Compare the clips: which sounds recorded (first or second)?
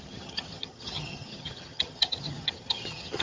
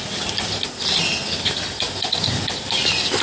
second